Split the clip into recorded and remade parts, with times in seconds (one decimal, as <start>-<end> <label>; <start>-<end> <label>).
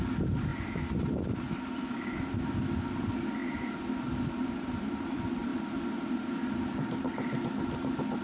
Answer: 0.0-8.2 recorded